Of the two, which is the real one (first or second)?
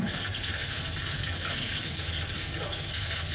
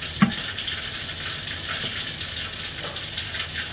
second